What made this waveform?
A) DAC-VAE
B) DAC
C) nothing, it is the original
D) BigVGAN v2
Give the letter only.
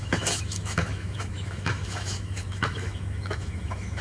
A